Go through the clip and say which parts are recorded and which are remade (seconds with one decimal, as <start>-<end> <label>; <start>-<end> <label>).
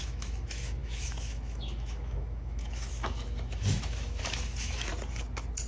0.0-4.9 remade; 4.9-5.7 recorded